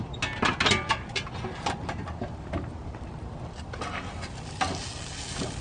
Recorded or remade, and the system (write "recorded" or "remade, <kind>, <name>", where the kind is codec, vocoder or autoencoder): recorded